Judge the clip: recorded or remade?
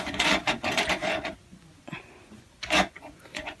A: remade